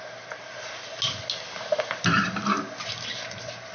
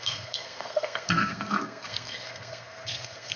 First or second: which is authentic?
first